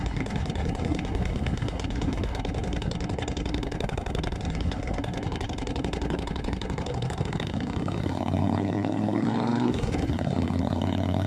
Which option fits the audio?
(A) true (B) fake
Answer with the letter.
B